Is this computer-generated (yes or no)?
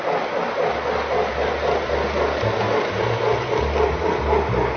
no